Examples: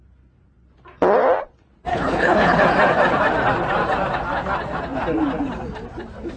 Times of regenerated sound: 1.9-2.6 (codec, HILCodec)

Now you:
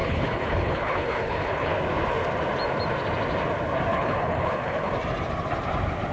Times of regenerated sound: 0.0-1.7 (codec, HILCodec); 3.9-4.9

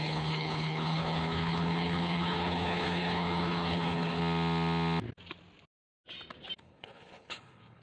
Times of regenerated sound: 0.0-4.2 (codec, HILCodec); 6.6-7.8

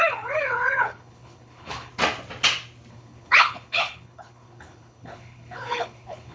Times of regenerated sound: 0.0-1.9 (codec, HILCodec); 2.9-6.3

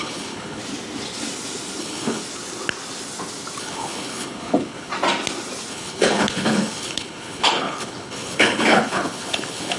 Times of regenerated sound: 0.0-0.6 (codec, HILCodec); 1.8-2.2; 3.6-4.9; 5.7-9.8

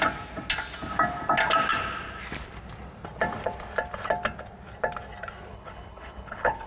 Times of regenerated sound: 5.5-6.7 (codec, HILCodec)

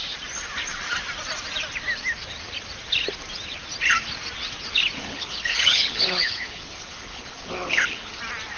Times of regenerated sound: 5.0-8.2 (codec, HILCodec)